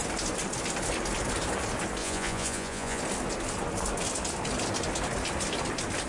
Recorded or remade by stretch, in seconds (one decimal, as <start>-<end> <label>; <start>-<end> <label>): 0.0-2.0 recorded; 2.0-3.0 remade; 3.0-6.1 recorded